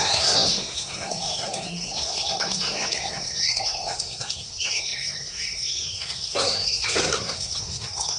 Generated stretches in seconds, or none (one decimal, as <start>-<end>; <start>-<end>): 0.0-8.2